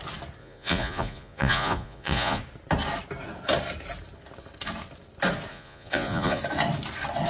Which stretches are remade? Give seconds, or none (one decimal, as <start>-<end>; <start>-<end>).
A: 0.4-2.4; 5.5-6.4